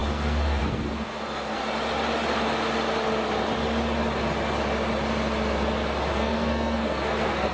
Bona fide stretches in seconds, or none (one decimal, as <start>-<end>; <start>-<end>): 1.6-6.1